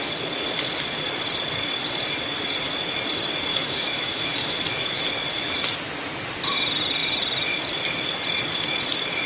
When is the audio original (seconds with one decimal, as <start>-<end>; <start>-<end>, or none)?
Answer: 0.0-3.5; 5.0-9.3